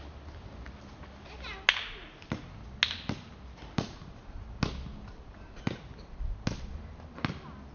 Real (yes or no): yes